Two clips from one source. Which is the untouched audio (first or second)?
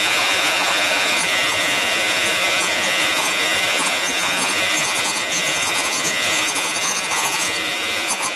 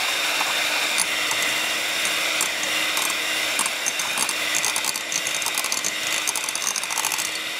second